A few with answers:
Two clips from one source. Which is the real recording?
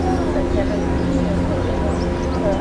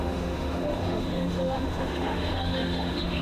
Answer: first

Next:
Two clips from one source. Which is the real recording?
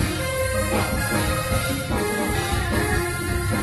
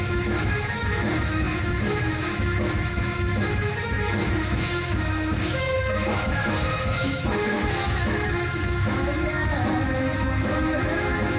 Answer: first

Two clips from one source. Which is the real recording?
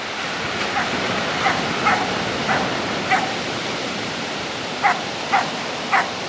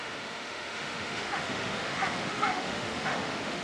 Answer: first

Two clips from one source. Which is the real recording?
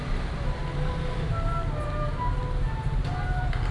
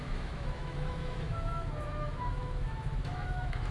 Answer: first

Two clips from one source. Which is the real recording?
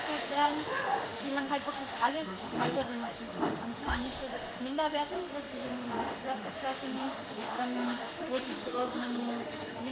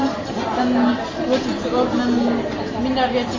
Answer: second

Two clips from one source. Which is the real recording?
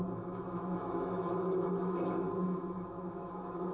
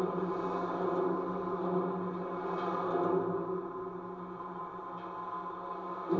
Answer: second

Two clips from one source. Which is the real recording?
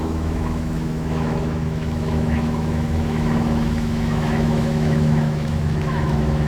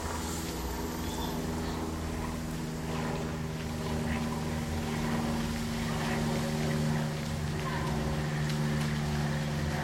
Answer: second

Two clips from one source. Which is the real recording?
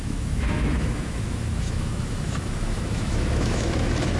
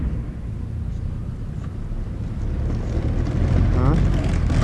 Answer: second